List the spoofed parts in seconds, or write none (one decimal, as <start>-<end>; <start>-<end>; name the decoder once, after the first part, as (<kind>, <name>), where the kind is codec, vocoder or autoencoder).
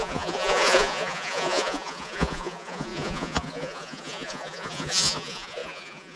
0.0-6.2 (vocoder, Vocos)